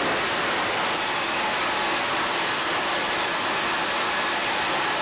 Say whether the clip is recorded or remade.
recorded